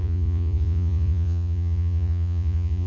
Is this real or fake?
fake